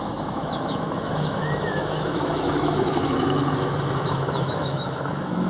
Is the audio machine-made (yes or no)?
yes